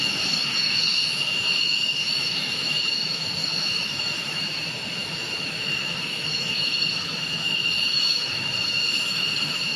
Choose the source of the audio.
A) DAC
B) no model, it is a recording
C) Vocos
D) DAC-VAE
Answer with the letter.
D